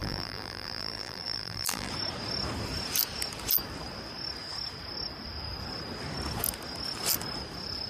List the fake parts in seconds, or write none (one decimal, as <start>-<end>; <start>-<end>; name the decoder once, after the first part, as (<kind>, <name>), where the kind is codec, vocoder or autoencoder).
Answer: 0.0-1.9 (vocoder, BigVGAN v2)